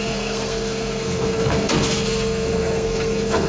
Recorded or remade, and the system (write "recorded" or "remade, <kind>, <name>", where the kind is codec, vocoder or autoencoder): remade, codec, SNAC